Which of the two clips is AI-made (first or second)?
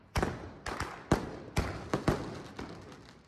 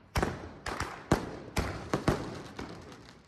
second